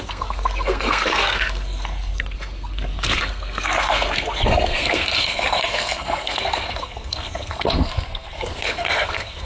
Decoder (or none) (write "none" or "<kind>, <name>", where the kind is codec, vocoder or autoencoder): codec, SNAC